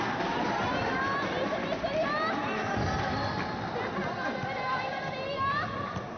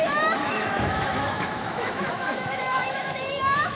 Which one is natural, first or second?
first